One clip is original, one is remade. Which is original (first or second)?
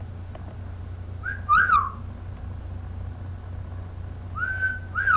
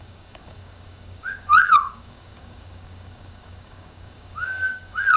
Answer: first